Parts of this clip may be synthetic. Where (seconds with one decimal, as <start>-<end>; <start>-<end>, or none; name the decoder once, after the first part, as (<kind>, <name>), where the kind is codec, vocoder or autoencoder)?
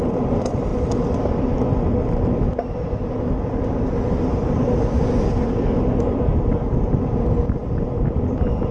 none